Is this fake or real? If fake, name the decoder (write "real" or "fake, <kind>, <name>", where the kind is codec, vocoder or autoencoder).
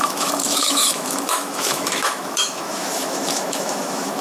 fake, autoencoder, DAC-VAE